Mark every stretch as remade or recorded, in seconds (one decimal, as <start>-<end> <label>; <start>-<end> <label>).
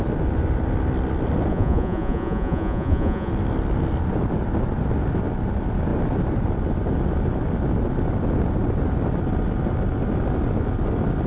0.0-1.5 recorded; 1.5-3.3 remade; 3.3-11.3 recorded